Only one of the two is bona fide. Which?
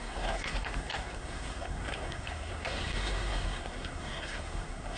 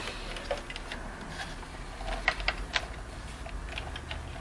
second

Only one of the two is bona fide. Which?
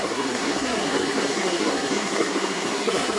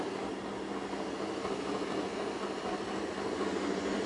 second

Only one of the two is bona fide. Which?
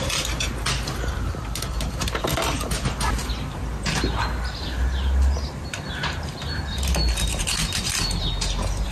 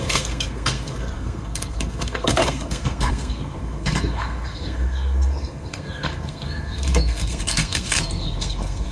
first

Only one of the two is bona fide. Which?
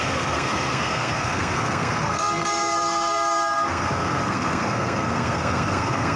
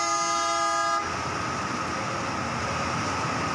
second